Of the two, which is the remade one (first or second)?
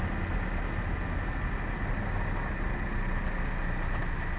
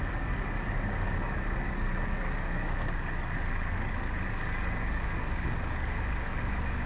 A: second